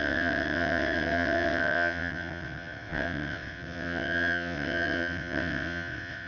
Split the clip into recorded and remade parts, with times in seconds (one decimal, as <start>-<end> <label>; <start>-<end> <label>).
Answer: 0.0-6.3 remade